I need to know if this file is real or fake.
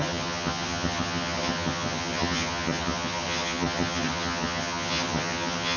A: fake